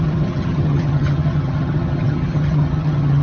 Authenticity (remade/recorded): remade